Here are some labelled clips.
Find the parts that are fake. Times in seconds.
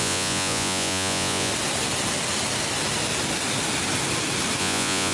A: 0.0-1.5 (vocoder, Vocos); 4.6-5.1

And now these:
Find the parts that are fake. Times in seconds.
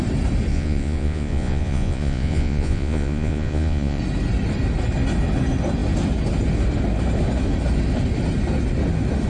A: 0.5-4.0 (vocoder, Vocos)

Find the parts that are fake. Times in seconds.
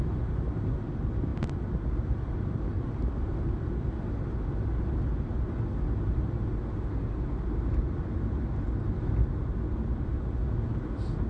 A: none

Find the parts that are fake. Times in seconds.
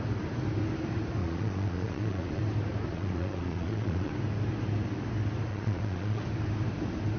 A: 1.2-2.4 (vocoder, Vocos); 2.9-4.1; 5.5-6.2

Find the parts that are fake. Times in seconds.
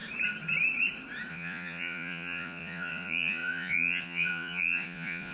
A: 1.3-5.3 (vocoder, Vocos)